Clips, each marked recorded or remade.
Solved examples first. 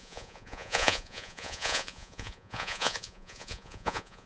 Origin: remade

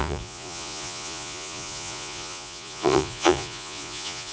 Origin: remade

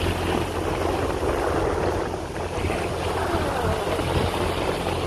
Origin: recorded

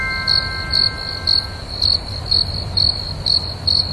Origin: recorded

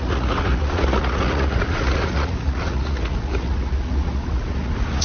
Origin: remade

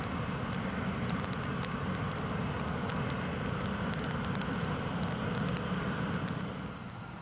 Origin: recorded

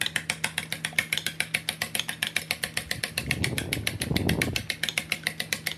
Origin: recorded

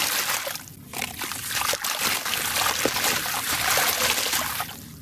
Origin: recorded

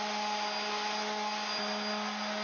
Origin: recorded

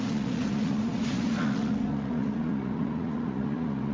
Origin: remade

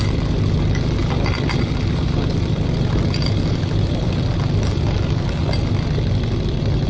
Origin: recorded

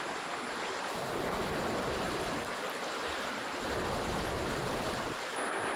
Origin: recorded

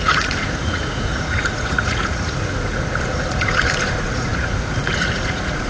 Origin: remade